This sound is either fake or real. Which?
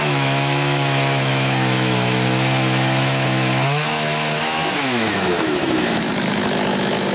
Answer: fake